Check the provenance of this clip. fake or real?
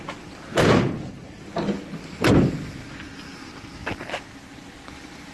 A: real